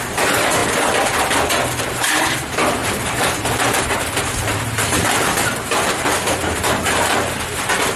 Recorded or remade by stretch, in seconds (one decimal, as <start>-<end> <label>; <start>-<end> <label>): 0.0-0.6 remade; 0.6-1.8 recorded; 1.8-8.0 remade